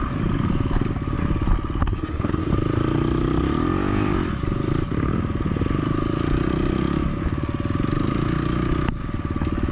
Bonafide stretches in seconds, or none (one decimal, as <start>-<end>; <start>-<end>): 0.0-1.8; 2.5-9.7